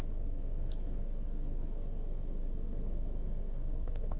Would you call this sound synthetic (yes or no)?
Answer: yes